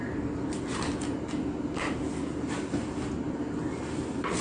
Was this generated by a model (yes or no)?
no